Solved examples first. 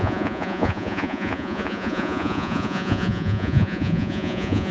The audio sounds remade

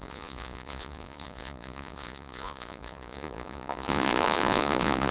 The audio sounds remade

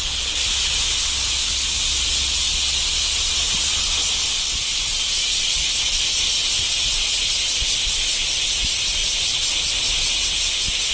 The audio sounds recorded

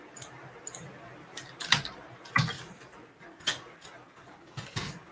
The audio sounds recorded